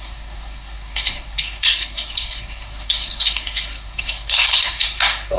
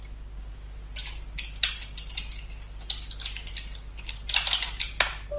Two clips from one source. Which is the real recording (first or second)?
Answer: second